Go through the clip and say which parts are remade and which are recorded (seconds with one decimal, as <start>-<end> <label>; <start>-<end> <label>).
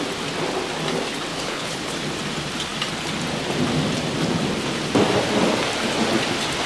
0.0-1.3 recorded; 1.3-1.9 remade; 1.9-6.7 recorded